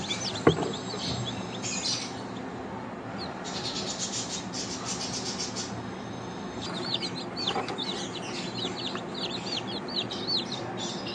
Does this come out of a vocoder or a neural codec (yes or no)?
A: no